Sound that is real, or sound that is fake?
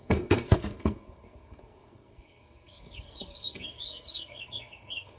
fake